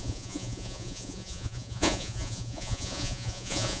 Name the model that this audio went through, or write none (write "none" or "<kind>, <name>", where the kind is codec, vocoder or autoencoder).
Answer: vocoder, Vocos